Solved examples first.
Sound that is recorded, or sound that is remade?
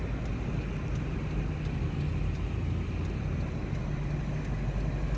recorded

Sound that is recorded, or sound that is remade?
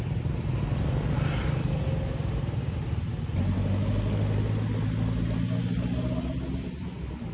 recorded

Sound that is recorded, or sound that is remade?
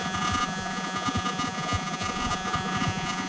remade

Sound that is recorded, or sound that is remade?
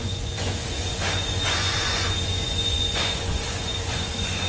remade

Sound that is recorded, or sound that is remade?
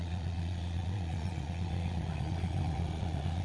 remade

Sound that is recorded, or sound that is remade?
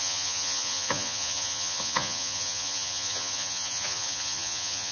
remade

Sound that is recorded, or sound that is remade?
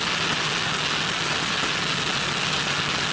recorded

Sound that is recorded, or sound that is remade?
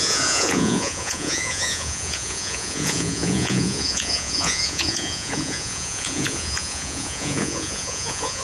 remade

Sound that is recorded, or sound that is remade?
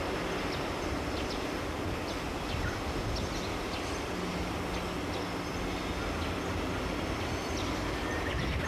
recorded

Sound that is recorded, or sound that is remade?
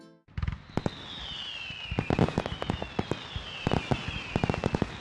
recorded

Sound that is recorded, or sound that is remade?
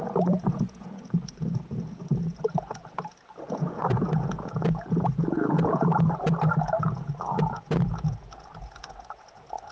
remade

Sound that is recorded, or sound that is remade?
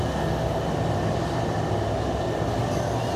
recorded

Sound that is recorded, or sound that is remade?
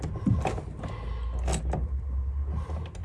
recorded